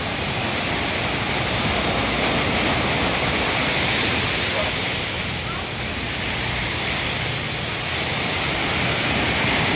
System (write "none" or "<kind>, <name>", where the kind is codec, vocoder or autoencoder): none